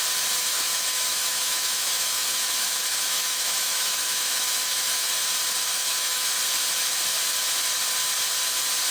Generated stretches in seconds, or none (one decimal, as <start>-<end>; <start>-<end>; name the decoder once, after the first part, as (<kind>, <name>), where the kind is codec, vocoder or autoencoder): 0.4-5.1 (autoencoder, DAC-VAE); 5.6-6.3